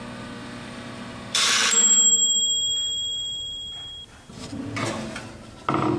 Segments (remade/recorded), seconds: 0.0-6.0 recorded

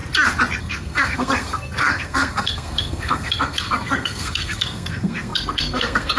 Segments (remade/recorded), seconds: 0.0-0.6 recorded; 0.6-6.2 remade

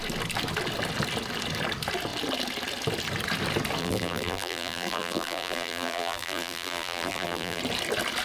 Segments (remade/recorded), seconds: 0.0-3.8 recorded; 3.8-7.6 remade; 7.6-8.2 recorded

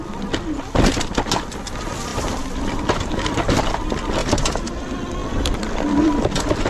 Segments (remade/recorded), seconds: 0.0-2.1 recorded; 2.1-3.1 remade; 3.1-4.2 recorded; 4.2-4.8 remade; 4.8-5.2 recorded; 5.2-6.3 remade; 6.3-6.7 recorded

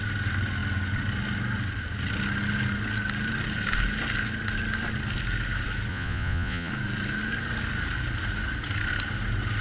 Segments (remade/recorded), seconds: 0.0-5.9 recorded; 5.9-6.7 remade; 6.7-9.6 recorded

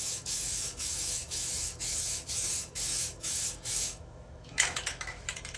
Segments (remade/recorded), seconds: 0.0-5.6 remade

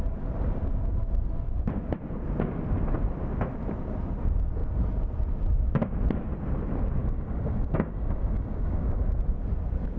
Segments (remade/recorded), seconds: 0.0-7.0 recorded; 7.0-9.0 remade; 9.0-10.0 recorded